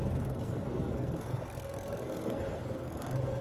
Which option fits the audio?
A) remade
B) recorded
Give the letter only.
A